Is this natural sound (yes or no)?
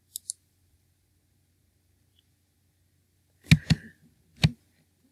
yes